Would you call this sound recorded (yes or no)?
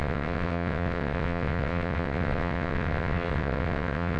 no